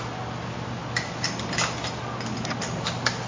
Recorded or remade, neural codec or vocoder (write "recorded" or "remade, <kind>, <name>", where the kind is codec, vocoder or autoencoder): recorded